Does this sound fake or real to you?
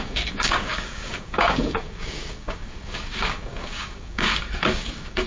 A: fake